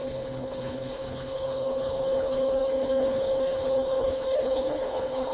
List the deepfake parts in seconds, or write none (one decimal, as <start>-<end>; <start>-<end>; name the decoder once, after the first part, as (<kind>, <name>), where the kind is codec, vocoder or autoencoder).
0.0-5.3 (codec, HILCodec)